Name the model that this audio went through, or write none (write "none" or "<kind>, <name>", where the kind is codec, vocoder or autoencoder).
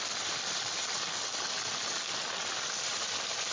none